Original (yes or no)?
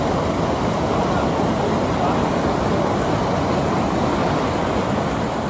yes